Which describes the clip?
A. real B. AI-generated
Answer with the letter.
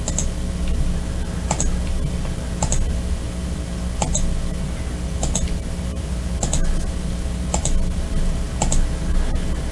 A